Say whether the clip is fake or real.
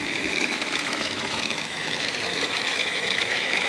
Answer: fake